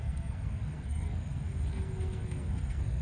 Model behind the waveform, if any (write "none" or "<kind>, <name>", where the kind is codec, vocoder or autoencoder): codec, SNAC